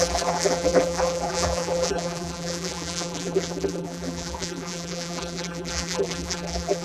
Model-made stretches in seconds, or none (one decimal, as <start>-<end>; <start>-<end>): 0.0-6.8